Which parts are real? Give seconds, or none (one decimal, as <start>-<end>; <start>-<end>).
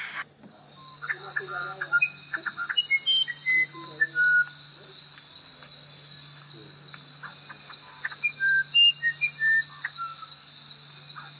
0.0-11.4